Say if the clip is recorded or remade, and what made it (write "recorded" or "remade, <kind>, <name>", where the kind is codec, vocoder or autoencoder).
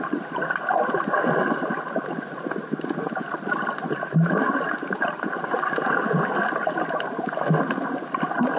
recorded